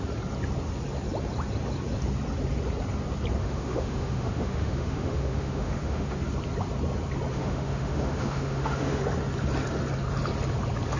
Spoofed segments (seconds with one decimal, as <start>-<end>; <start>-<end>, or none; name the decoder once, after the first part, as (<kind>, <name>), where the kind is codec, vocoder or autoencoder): 3.4-6.2 (autoencoder, DAC-VAE); 7.3-9.0